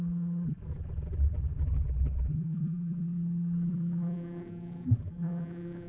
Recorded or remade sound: remade